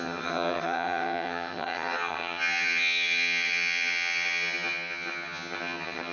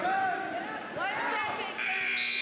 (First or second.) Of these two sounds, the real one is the second